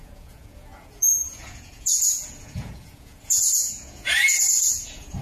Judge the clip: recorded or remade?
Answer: remade